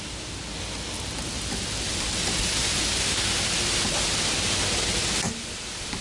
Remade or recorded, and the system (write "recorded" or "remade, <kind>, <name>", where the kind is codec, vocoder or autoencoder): recorded